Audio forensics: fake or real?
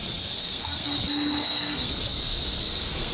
fake